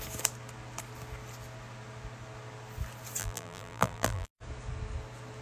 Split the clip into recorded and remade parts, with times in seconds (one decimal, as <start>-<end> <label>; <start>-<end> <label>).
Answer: 0.0-3.2 recorded; 3.2-4.3 remade; 4.3-5.4 recorded